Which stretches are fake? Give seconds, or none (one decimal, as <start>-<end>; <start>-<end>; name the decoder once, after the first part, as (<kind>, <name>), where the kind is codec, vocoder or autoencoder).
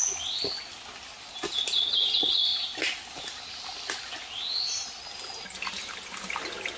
none